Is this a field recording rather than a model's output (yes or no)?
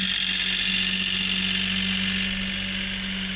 yes